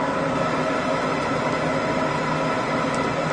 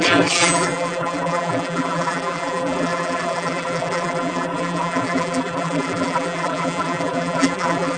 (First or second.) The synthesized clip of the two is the second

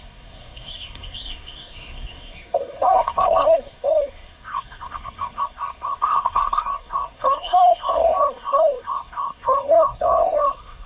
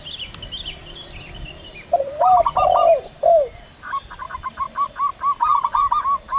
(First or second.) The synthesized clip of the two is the first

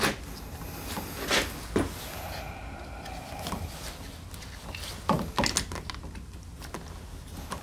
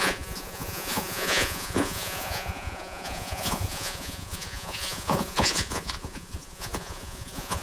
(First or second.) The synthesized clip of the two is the second